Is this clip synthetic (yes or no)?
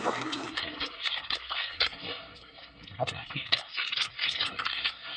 yes